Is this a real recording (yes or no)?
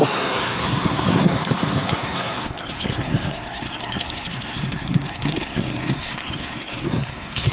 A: no